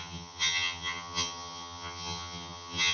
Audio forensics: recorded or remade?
remade